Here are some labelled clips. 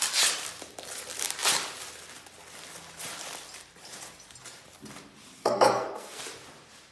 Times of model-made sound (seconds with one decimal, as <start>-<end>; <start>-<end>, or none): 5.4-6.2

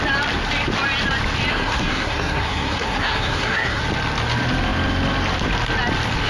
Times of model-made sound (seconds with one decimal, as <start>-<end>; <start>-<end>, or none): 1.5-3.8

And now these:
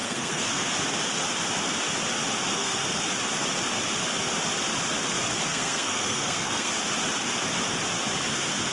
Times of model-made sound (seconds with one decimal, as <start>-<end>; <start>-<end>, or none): 0.0-0.7; 2.5-3.1; 5.5-6.7

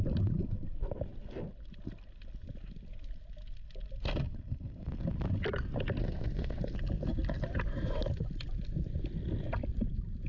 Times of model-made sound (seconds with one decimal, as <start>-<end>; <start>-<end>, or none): 6.0-6.6

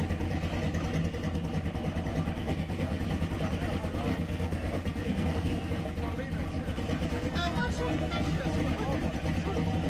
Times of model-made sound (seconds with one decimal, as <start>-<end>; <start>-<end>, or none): 2.4-3.0; 4.1-5.8; 7.1-8.4

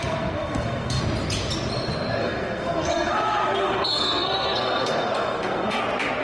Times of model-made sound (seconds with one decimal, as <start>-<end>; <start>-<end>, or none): 0.0-1.0; 2.2-5.8